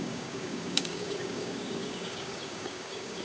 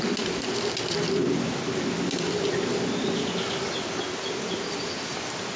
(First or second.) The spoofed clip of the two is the first